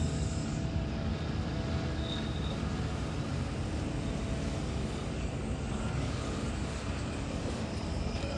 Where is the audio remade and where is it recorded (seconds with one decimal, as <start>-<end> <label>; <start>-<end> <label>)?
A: 0.0-1.1 remade; 1.1-4.6 recorded; 4.6-8.4 remade